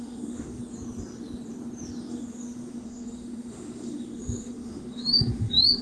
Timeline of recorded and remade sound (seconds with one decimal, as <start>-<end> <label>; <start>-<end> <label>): 0.0-0.6 remade; 0.6-2.1 recorded; 2.1-5.8 remade